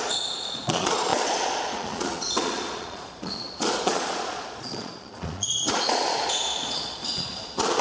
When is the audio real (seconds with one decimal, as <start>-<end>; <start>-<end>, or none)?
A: none